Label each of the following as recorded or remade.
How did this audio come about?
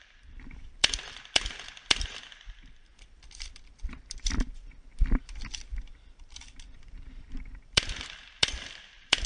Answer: remade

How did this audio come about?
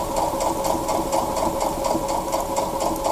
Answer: recorded